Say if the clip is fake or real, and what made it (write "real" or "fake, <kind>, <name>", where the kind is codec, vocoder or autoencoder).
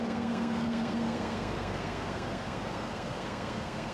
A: fake, codec, SNAC